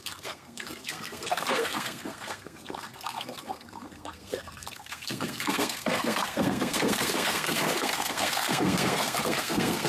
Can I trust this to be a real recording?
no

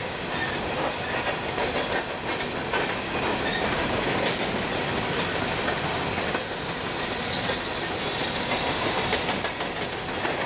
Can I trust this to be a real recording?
yes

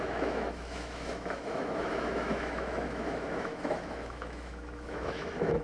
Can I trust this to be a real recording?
no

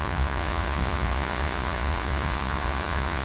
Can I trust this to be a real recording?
no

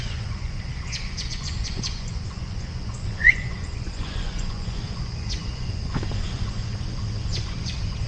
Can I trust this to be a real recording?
no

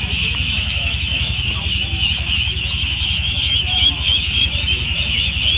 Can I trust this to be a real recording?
no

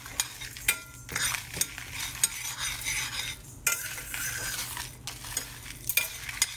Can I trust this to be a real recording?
yes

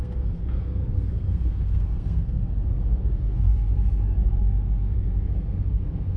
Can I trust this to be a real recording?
no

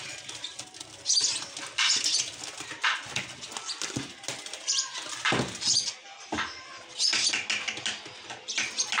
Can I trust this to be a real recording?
yes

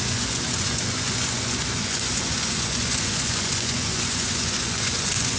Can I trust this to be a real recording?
no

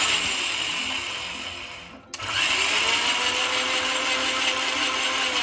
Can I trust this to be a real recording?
yes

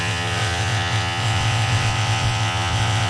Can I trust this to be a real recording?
no